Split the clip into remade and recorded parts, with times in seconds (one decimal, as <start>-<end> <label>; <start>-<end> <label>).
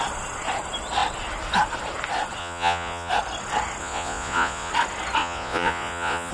0.0-2.4 recorded; 2.4-3.1 remade; 3.1-3.8 recorded; 3.8-4.7 remade; 4.7-5.2 recorded; 5.2-6.3 remade